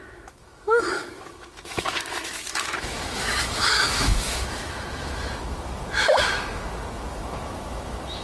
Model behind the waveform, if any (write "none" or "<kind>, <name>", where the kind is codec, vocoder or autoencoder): autoencoder, DAC-VAE